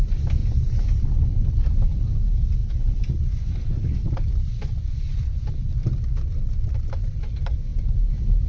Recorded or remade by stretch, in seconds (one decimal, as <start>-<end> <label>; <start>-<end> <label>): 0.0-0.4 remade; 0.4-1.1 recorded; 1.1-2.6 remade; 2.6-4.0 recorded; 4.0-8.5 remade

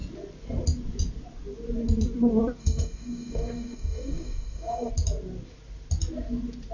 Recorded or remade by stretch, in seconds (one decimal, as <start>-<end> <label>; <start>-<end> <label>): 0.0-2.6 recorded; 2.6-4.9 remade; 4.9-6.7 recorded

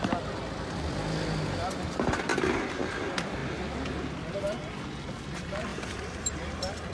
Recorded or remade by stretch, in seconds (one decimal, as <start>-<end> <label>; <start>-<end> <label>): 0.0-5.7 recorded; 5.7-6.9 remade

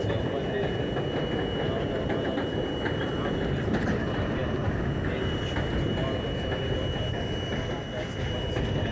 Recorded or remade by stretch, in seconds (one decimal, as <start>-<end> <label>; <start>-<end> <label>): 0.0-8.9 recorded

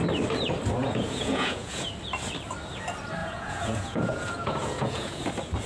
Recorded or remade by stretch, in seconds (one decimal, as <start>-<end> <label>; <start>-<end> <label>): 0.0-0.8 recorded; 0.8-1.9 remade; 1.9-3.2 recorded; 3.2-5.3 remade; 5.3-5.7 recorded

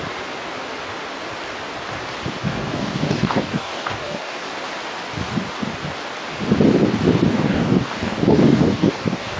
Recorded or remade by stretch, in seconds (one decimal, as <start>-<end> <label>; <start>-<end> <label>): 0.0-2.4 recorded; 2.4-4.4 remade; 4.4-7.3 recorded; 7.3-9.4 remade

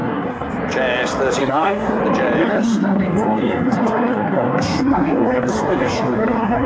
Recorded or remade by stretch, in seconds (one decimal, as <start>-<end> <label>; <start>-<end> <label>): 0.0-0.5 remade; 0.5-1.4 recorded; 1.4-2.0 remade; 2.0-2.4 recorded; 2.4-6.7 remade